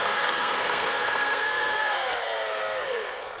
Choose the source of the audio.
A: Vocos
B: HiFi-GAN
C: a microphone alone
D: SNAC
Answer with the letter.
D